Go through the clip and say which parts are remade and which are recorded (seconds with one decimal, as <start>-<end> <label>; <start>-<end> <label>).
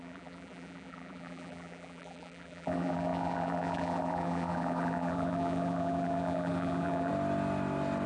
0.0-7.1 remade; 7.1-8.1 recorded